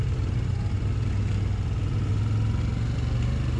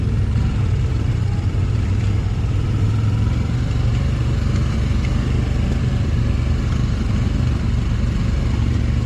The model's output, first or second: second